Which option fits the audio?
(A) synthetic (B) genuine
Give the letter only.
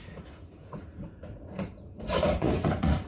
A